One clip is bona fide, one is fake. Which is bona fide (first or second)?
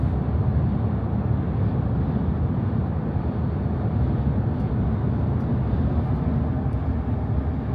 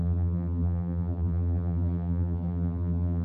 first